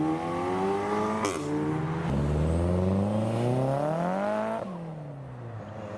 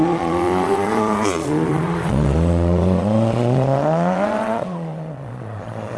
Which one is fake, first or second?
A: second